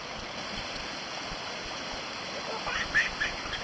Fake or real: real